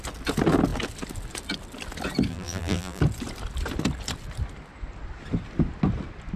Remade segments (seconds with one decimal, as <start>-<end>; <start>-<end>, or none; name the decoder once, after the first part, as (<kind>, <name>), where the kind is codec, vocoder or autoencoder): 2.3-3.0 (vocoder, BigVGAN v2)